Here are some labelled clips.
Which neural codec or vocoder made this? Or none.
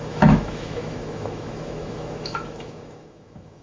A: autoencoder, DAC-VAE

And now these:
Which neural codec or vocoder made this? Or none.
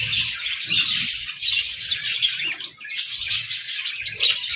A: none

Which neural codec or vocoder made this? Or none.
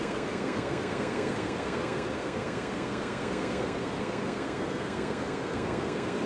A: codec, SNAC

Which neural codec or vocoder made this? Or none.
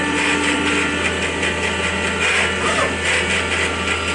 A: none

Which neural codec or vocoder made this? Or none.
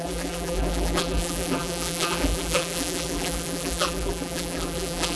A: vocoder, BigVGAN v2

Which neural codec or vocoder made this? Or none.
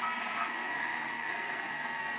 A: codec, SNAC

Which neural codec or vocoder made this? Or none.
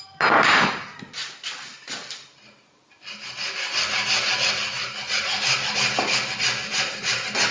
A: none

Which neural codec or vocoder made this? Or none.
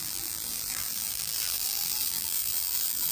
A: vocoder, BigVGAN v2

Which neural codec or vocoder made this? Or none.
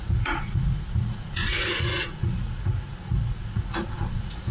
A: vocoder, Vocos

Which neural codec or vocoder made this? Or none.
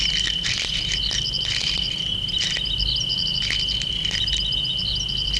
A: none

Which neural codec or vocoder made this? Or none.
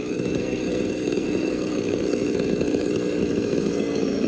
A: codec, SNAC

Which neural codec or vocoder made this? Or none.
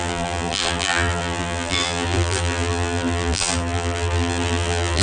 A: vocoder, BigVGAN v2